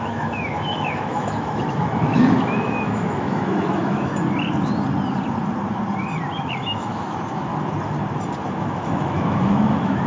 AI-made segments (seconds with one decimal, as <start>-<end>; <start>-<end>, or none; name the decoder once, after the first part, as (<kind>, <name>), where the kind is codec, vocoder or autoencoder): 0.0-4.1 (autoencoder, DAC-VAE); 6.4-7.5; 8.6-10.1